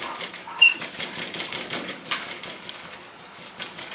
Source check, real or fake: fake